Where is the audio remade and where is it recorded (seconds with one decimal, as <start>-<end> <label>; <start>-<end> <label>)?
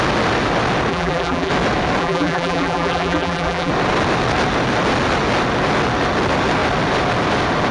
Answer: 0.0-0.9 recorded; 0.9-1.5 remade; 1.5-2.0 recorded; 2.0-3.7 remade; 3.7-7.7 recorded